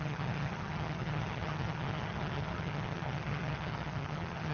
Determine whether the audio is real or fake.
fake